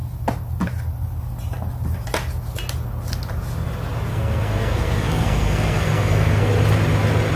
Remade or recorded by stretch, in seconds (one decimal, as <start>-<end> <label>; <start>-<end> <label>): 0.0-4.1 recorded; 4.1-6.5 remade; 6.5-7.4 recorded